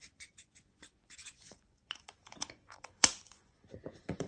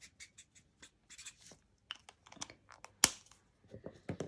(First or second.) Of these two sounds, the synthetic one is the first